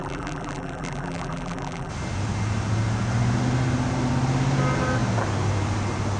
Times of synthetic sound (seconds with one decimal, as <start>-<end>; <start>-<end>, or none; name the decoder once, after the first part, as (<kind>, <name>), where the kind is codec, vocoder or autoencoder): 0.0-1.9 (vocoder, BigVGAN v2)